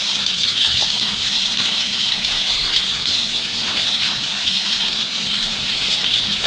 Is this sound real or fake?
fake